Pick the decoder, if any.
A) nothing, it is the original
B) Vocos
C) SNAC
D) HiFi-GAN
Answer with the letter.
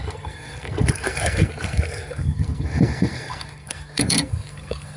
C